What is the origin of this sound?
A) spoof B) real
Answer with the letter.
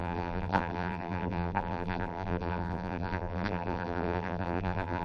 A